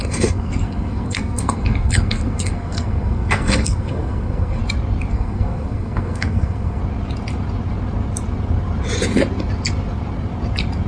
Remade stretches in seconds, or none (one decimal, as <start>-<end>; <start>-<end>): 0.0-4.6; 5.1-6.8